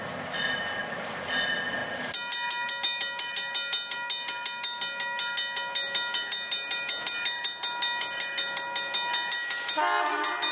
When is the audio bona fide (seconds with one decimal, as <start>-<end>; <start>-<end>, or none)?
0.0-10.5